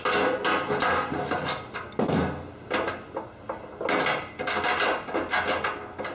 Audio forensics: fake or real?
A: real